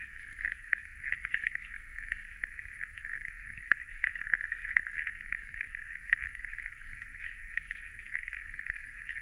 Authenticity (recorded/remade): remade